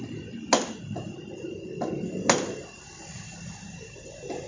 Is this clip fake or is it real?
real